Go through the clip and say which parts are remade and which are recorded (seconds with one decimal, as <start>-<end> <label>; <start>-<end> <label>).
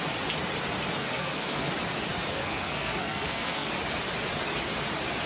0.0-1.0 recorded; 1.0-1.7 remade; 1.7-2.3 recorded; 2.3-3.7 remade; 3.7-5.3 recorded